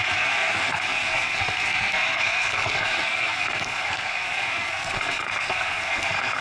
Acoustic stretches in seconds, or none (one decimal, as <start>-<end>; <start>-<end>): none